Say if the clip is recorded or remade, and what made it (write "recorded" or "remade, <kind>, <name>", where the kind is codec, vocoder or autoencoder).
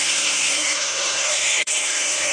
remade, codec, SNAC